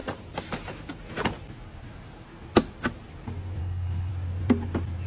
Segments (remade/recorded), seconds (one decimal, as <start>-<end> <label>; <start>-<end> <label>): 0.0-3.6 recorded; 3.6-4.1 remade; 4.1-5.1 recorded